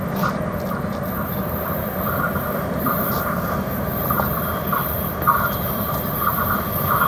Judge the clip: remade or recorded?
recorded